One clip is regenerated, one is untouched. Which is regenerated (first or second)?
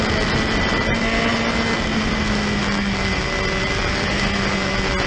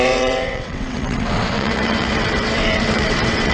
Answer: second